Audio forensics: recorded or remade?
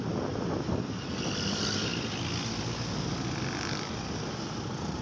recorded